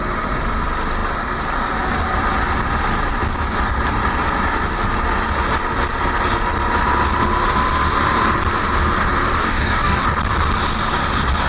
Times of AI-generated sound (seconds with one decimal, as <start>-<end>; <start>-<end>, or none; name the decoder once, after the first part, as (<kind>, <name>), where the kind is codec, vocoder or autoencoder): 9.4-10.0 (codec, DAC)